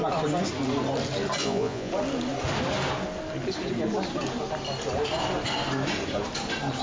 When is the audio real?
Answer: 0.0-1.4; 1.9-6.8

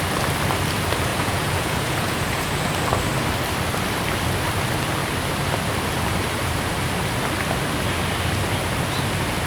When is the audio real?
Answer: 0.0-1.1; 2.6-9.5

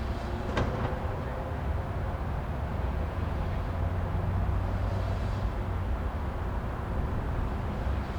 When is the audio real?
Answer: 0.0-2.7; 3.4-8.2

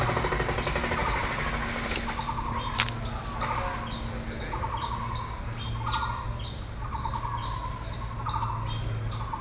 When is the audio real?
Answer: 0.0-9.4

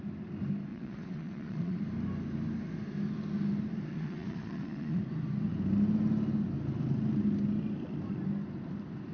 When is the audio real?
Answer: 0.0-0.7; 1.8-3.9; 5.0-9.1